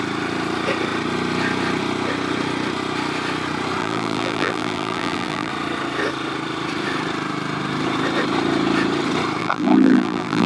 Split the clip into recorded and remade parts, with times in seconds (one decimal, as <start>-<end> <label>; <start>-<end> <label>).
0.0-3.8 recorded; 3.8-5.5 remade; 5.5-9.4 recorded; 9.4-10.5 remade